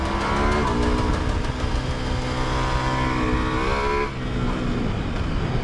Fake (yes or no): no